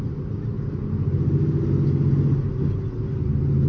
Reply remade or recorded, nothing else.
recorded